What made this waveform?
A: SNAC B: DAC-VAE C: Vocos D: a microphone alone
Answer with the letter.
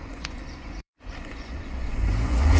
C